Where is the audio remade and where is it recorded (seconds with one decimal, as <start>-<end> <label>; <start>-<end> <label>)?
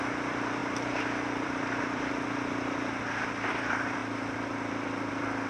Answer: 0.0-2.9 remade; 2.9-3.5 recorded; 3.5-5.5 remade